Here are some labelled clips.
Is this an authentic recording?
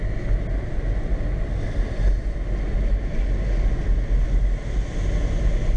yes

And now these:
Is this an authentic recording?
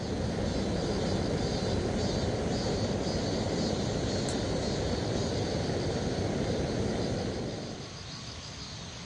yes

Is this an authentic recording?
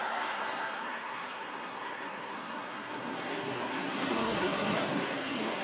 no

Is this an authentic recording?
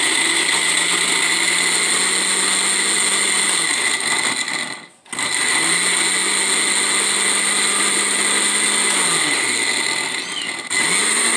yes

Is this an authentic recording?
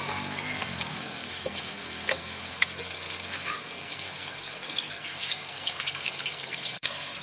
no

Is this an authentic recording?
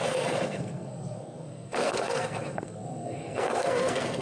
no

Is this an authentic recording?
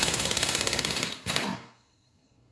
no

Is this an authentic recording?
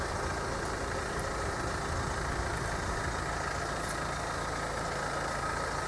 yes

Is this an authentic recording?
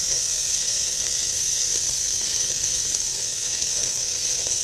no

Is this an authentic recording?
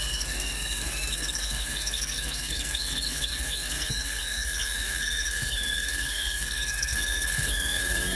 no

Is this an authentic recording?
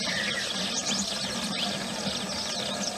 yes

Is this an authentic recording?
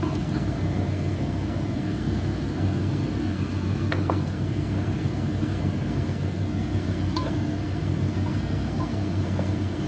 no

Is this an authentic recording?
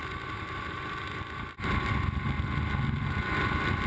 yes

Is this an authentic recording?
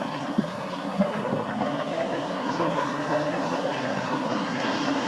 no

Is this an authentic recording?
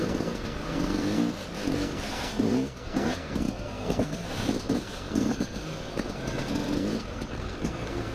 no